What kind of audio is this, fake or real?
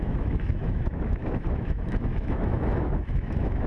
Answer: fake